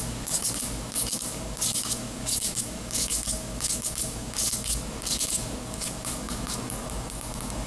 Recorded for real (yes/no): no